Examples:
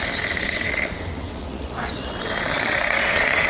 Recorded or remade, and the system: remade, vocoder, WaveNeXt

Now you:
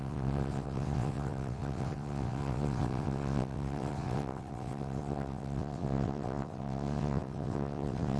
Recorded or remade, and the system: remade, vocoder, WaveNeXt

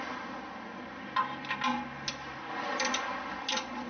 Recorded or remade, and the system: recorded